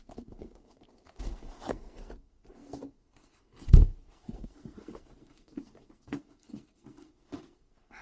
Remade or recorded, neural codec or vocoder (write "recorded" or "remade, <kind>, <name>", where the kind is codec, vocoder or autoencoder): remade, codec, SNAC